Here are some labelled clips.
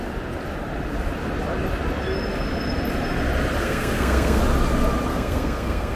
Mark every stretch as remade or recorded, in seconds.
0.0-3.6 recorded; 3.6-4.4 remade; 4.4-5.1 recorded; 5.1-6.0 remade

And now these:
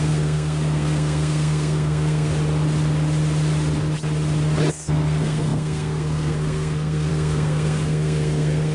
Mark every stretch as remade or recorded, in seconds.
0.0-2.3 remade; 2.3-4.7 recorded; 4.7-8.7 remade

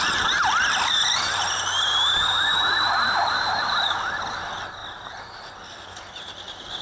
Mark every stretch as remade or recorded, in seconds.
0.0-6.8 recorded

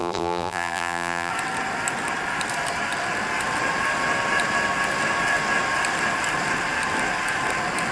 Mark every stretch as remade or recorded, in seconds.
0.0-1.3 remade; 1.3-7.9 recorded

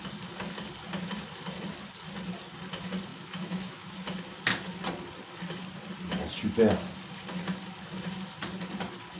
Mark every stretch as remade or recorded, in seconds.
0.0-3.1 recorded; 3.1-3.9 remade; 3.9-9.2 recorded